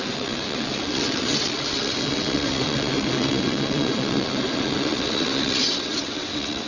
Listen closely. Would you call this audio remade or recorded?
remade